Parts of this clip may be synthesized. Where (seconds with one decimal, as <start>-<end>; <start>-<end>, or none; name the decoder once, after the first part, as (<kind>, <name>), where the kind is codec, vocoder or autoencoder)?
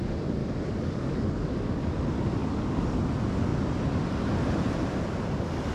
0.4-1.9 (codec, DAC); 2.4-3.0